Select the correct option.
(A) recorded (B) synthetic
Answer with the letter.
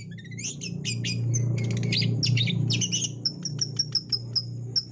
A